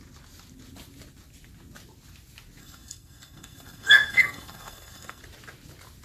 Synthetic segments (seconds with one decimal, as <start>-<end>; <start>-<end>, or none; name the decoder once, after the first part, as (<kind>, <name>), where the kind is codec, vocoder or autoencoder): 2.6-5.2 (codec, SNAC)